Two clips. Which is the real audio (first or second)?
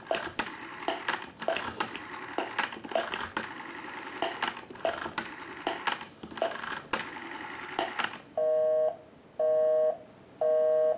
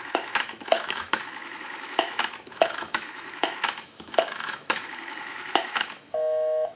first